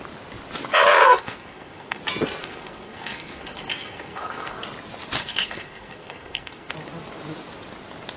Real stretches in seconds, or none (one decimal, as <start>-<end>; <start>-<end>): 0.0-1.0; 2.0-2.4; 4.6-5.2; 6.7-8.2